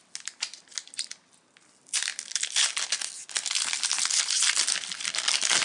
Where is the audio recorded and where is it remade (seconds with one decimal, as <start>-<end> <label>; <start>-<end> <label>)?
0.0-5.6 recorded